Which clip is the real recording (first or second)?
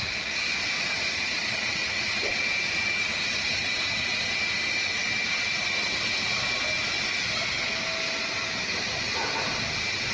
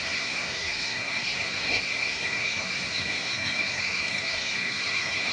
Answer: first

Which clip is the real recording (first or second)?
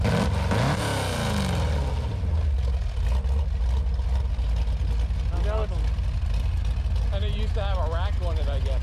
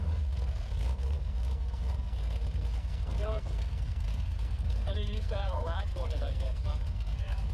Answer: first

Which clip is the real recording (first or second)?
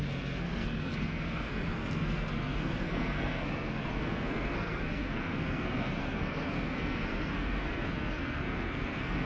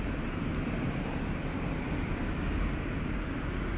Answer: second